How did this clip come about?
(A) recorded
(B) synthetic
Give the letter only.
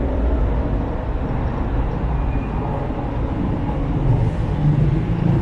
A